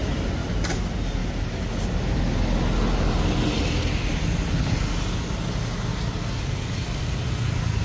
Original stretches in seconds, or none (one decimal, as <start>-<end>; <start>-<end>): 0.0-7.8